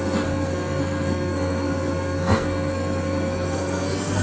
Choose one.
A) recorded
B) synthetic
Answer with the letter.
B